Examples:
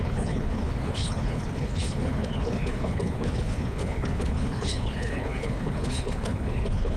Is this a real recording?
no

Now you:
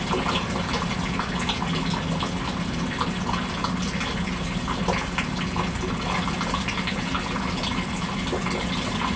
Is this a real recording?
yes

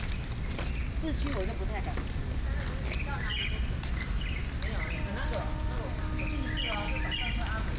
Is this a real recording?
yes